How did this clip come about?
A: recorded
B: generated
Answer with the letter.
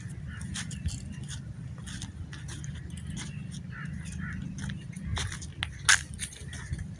A